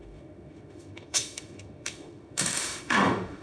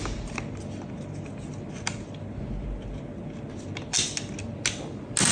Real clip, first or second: second